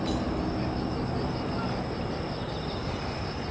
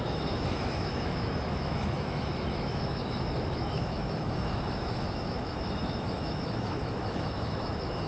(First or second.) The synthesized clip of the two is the second